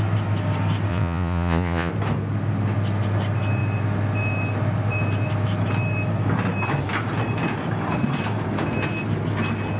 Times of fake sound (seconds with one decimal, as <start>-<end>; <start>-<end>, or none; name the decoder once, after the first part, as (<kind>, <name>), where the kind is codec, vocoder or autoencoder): 0.9-1.9 (vocoder, Vocos)